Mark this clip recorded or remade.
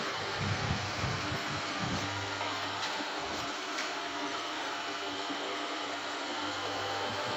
remade